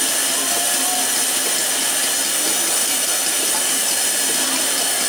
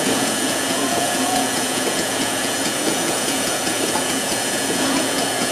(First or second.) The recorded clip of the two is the first